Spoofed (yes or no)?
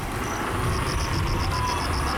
no